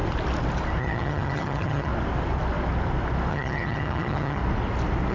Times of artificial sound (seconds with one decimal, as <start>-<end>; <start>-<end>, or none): 0.8-1.9; 3.3-4.4